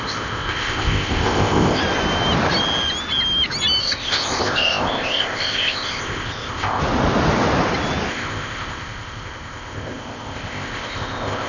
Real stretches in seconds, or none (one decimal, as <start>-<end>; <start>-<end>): 1.8-3.8; 6.8-8.1